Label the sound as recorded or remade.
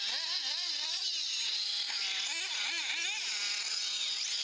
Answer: recorded